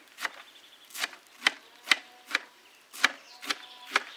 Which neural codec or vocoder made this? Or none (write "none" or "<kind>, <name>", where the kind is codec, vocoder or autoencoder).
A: vocoder, BigVGAN v2